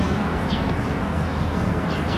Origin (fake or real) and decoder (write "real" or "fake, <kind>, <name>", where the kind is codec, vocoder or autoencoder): fake, codec, SNAC